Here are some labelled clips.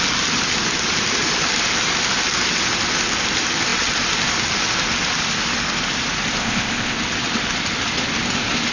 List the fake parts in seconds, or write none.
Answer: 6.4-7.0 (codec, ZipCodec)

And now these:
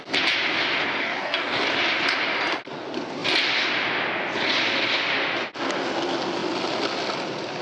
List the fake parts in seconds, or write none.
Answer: 1.0-1.6 (codec, DAC)

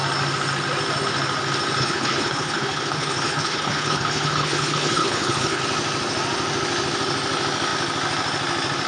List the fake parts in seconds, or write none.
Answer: 1.8-5.6 (codec, HILCodec)